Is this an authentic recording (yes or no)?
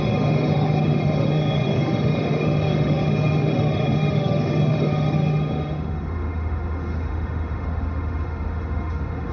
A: no